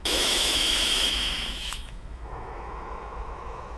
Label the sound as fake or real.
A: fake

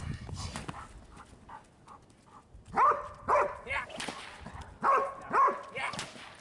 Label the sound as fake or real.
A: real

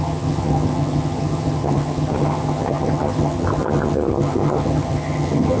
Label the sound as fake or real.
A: fake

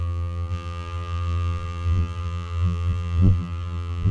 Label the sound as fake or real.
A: fake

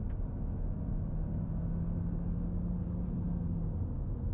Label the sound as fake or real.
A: real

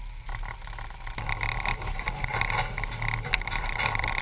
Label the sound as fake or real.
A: real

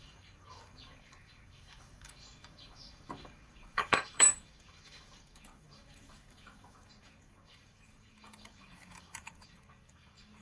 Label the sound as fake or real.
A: fake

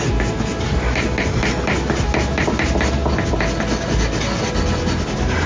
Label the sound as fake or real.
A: real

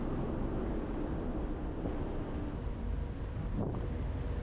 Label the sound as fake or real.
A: real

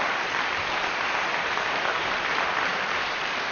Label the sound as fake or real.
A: fake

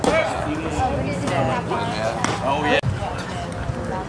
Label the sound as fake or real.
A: real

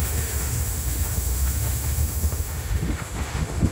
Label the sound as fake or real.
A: fake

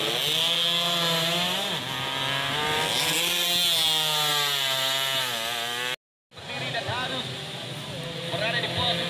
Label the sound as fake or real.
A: real